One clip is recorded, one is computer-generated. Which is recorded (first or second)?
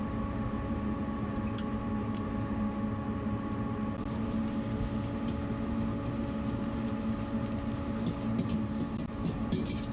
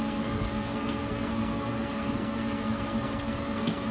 first